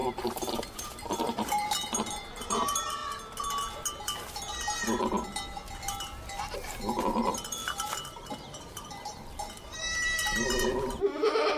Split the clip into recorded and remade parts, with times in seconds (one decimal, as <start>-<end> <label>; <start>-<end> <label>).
0.0-0.5 recorded; 0.5-3.0 remade; 3.0-7.0 recorded; 7.0-7.6 remade; 7.6-8.7 recorded; 8.7-11.6 remade